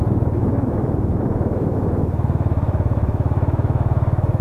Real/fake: fake